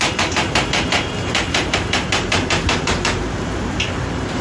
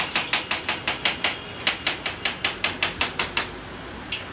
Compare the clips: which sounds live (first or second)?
second